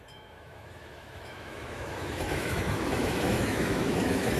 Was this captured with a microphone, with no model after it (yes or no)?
no